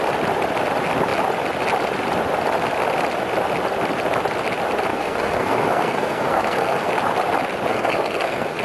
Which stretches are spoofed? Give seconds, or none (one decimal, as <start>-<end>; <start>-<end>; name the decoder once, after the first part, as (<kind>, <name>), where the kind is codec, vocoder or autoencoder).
4.9-6.9 (codec, SNAC); 7.7-8.6